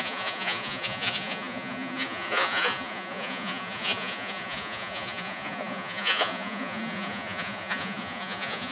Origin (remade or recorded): remade